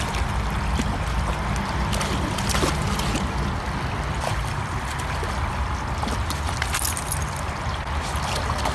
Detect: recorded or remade recorded